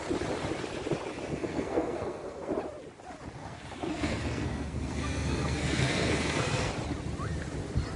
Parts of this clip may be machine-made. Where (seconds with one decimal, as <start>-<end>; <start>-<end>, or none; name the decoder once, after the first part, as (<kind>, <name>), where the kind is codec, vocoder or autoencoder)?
1.3-2.5 (codec, SNAC); 3.4-6.7